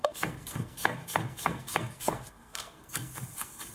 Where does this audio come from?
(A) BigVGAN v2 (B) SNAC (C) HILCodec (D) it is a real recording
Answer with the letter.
B